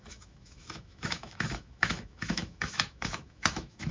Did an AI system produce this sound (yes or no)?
yes